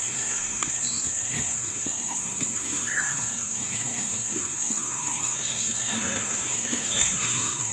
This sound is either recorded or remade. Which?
remade